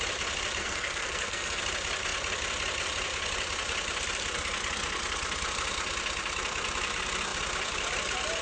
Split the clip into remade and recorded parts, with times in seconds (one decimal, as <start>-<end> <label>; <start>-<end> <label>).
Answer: 0.0-0.6 recorded; 0.6-1.6 remade; 1.6-8.4 recorded